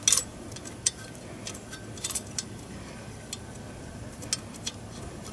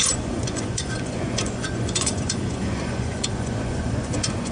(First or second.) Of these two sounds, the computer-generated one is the second